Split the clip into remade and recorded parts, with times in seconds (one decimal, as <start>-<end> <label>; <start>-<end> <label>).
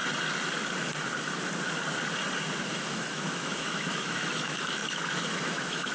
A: 0.0-2.7 recorded; 2.7-5.9 remade